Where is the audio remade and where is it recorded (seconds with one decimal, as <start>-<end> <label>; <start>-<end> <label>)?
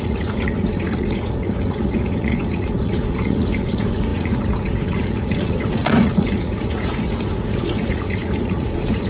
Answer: 0.0-9.1 remade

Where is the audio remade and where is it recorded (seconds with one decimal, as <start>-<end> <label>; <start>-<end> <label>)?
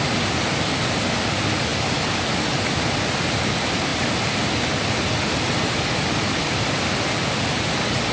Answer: 0.0-8.1 recorded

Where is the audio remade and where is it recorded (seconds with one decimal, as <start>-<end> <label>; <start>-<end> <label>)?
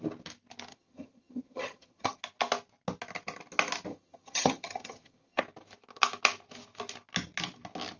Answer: 0.0-0.7 recorded; 0.7-2.2 remade; 2.2-3.9 recorded; 3.9-5.4 remade; 5.4-8.0 recorded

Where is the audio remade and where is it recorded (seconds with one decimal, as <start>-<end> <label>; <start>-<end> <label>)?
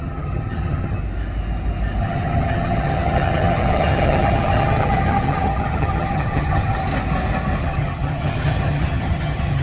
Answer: 0.0-1.0 remade; 1.0-2.0 recorded; 2.0-6.9 remade; 6.9-7.6 recorded; 7.6-9.6 remade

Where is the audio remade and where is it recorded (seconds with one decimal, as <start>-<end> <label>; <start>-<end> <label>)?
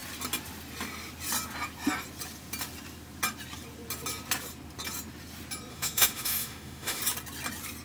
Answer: 0.0-5.7 recorded; 5.7-7.0 remade; 7.0-7.8 recorded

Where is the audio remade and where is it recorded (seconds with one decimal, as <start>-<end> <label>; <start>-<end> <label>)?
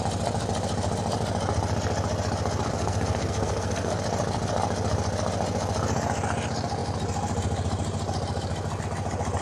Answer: 0.0-2.7 recorded; 2.7-4.0 remade; 4.0-9.4 recorded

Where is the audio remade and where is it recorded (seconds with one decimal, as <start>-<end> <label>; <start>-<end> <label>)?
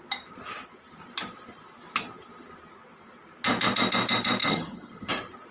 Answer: 0.0-4.4 recorded; 4.4-5.1 remade; 5.1-5.5 recorded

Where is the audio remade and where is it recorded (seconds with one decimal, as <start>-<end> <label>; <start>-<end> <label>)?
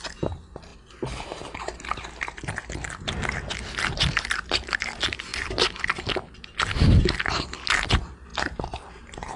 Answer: 0.0-9.4 recorded